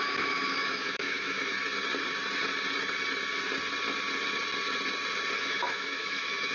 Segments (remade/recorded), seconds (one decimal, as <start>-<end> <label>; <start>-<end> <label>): 0.0-1.5 remade; 1.5-5.4 recorded; 5.4-6.5 remade